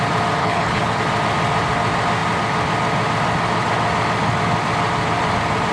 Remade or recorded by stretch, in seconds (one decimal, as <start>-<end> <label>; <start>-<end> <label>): 0.0-0.4 recorded; 0.4-1.0 remade; 1.0-5.7 recorded